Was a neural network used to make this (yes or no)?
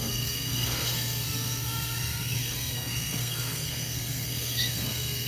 yes